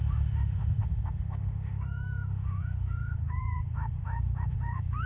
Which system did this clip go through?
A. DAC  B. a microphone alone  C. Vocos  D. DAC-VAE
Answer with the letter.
D